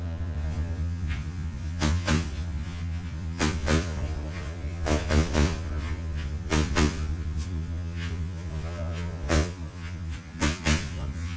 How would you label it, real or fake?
fake